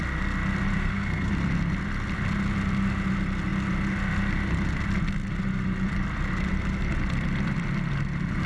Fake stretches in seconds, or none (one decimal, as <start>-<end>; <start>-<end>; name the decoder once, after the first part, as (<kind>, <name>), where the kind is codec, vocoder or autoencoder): 0.8-1.3 (codec, SNAC)

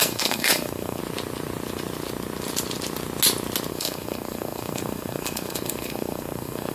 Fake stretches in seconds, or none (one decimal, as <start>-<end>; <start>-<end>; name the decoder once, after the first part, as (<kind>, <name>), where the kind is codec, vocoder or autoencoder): 0.0-1.0 (codec, SNAC); 3.7-6.7